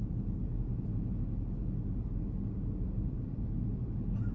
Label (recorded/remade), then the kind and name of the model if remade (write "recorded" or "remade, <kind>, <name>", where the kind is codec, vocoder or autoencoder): recorded